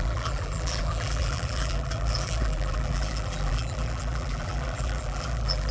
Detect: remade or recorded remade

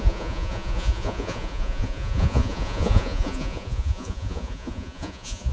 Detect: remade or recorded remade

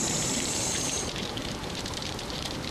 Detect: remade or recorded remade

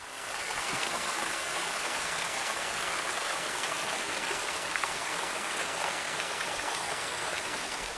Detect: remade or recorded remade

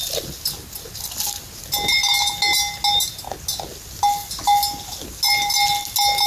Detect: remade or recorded recorded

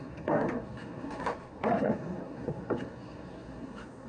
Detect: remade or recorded remade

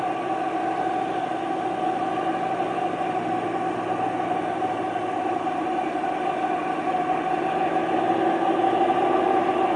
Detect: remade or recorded recorded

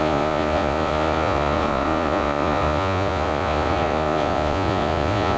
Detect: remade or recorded remade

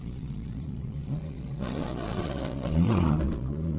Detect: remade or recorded remade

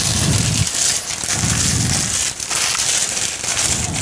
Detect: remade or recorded recorded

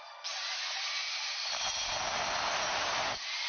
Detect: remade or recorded recorded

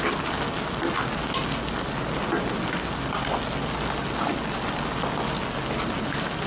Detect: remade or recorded recorded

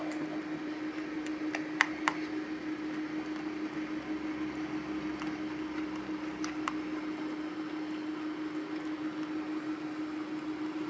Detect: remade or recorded recorded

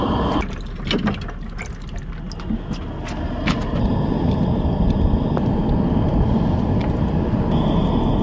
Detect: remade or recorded recorded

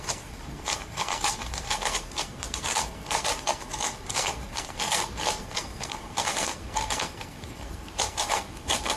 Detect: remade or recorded remade